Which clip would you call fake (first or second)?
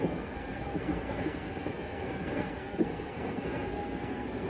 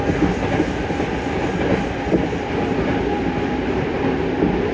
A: first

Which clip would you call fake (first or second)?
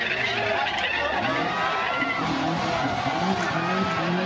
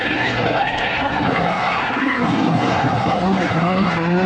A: second